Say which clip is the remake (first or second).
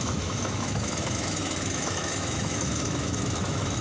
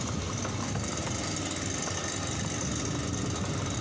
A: first